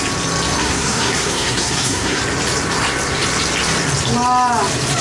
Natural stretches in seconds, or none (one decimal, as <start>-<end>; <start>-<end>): 0.0-0.6; 2.2-5.0